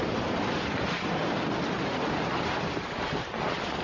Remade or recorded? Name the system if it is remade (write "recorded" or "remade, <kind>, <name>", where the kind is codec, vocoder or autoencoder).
recorded